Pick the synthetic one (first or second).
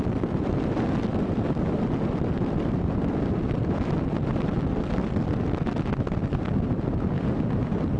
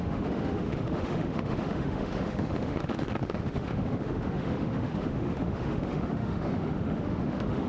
second